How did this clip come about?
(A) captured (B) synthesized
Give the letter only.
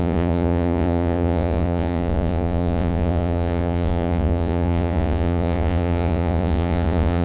B